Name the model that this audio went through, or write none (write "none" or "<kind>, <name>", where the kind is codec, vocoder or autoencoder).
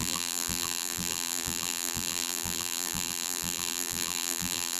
vocoder, BigVGAN v2